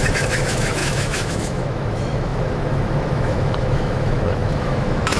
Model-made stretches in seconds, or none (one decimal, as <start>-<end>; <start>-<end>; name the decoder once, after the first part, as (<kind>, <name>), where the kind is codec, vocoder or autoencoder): 0.0-5.2 (autoencoder, DAC-VAE)